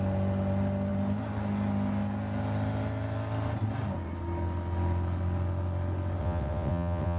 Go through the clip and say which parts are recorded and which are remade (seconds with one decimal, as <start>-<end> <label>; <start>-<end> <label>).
0.0-6.2 recorded; 6.2-7.2 remade